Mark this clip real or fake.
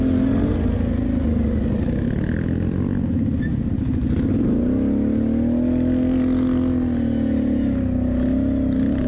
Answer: real